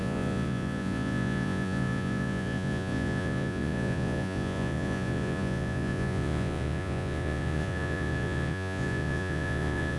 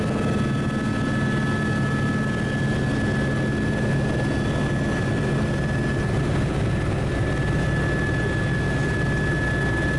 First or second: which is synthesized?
first